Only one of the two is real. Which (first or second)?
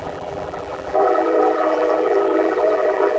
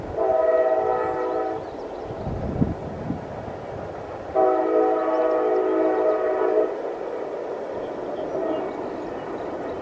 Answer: second